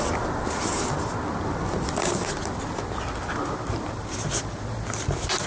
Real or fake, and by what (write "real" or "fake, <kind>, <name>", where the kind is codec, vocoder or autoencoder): real